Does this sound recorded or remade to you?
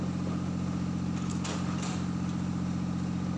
recorded